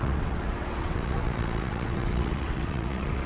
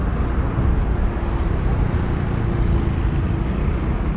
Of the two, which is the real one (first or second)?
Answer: second